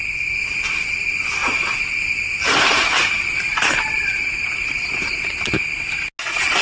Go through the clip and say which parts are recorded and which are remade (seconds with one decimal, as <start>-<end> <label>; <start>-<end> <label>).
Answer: 0.0-0.6 remade; 0.6-1.4 recorded; 1.4-5.4 remade; 5.4-6.6 recorded